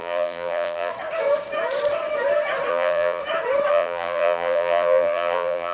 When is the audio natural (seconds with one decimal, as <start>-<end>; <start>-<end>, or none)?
0.9-2.7; 3.2-3.7